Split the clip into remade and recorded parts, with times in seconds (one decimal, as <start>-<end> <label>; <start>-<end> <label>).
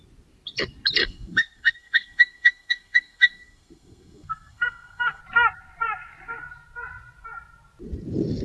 0.0-1.0 recorded; 1.0-5.2 remade; 5.2-8.4 recorded